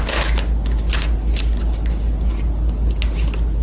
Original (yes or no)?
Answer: yes